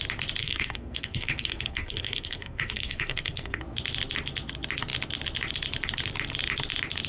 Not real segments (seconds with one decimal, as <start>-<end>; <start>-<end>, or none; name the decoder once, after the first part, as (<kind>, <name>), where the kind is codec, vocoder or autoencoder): 0.4-3.6 (codec, SNAC)